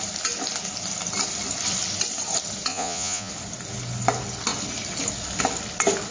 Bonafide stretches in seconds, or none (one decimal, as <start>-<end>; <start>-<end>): 0.0-2.7; 3.3-6.1